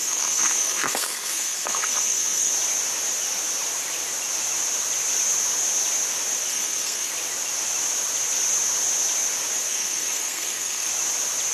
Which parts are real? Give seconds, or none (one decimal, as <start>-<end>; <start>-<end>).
2.5-6.5; 7.1-9.7; 10.9-11.5